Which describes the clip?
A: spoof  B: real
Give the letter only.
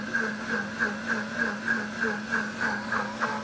B